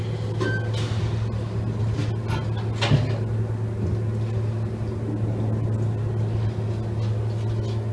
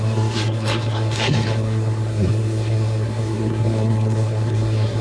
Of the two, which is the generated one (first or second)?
second